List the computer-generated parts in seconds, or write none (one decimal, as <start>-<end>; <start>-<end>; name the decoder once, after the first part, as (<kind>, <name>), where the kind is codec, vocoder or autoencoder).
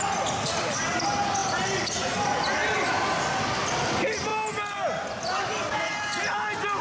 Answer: none